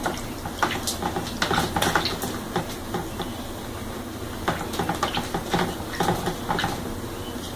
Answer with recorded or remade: recorded